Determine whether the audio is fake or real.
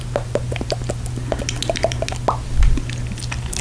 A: real